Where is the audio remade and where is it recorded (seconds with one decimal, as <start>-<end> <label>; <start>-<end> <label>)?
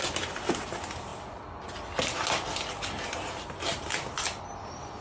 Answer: 0.0-5.0 recorded